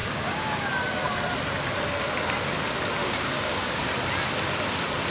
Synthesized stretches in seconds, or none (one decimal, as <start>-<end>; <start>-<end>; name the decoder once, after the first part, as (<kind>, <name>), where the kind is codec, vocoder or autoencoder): 0.0-0.7 (codec, DAC); 3.0-3.8